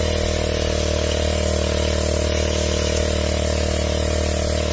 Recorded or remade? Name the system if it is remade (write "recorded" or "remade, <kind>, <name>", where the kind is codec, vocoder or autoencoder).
recorded